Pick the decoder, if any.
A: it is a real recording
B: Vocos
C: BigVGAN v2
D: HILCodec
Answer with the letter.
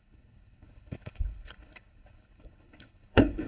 D